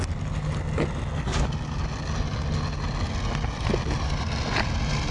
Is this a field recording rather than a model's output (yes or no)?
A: yes